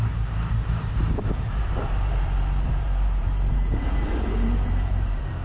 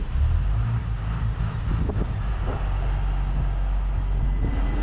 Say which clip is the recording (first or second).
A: second